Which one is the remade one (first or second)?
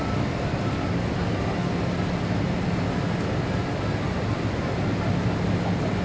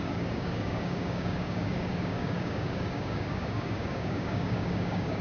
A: second